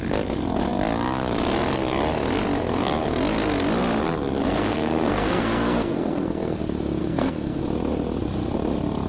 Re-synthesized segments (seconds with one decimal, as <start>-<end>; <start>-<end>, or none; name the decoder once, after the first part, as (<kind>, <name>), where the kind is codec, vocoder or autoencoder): 4.4-6.6 (codec, SNAC); 7.0-7.6